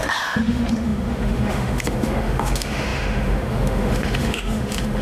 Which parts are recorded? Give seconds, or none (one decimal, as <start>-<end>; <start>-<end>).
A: none